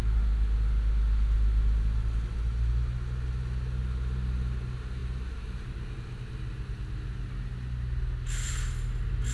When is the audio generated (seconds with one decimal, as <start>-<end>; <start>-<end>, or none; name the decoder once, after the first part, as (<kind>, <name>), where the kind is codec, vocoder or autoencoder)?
none